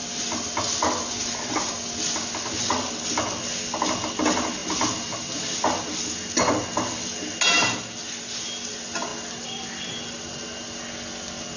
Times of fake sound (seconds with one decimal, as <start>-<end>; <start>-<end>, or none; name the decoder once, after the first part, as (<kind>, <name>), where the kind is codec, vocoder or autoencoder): none